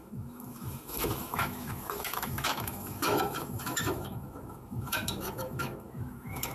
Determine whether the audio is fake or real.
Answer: fake